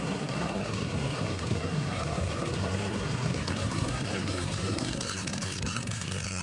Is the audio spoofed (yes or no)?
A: yes